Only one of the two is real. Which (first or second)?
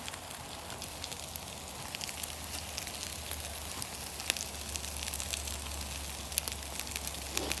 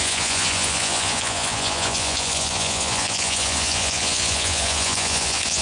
first